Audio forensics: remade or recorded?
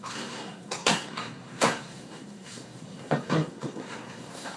remade